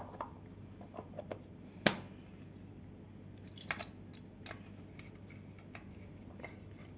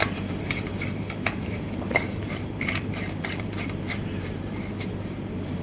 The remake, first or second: second